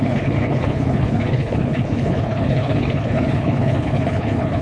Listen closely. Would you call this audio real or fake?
fake